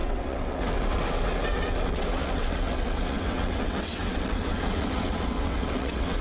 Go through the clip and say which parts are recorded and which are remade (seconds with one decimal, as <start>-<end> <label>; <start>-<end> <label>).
0.0-6.2 remade